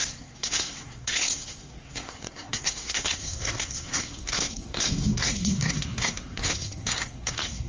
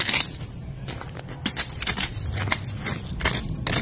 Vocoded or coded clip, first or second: first